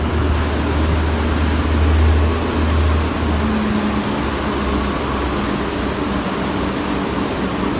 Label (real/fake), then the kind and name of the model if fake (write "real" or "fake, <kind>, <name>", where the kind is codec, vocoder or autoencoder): real